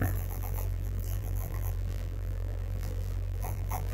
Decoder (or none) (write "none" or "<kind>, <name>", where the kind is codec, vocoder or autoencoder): vocoder, BigVGAN v2